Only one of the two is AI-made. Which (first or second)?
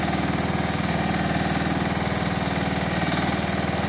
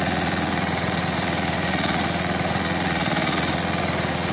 second